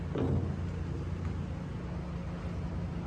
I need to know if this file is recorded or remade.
recorded